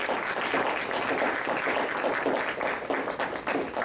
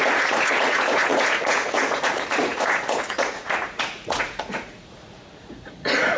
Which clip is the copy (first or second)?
second